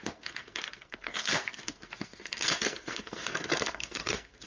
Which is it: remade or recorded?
remade